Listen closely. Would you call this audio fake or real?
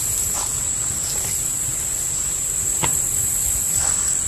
real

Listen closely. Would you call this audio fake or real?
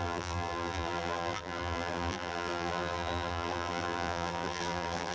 fake